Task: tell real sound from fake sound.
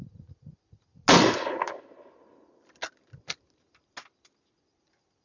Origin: real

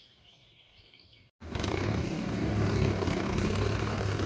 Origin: fake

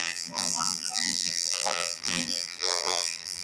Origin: fake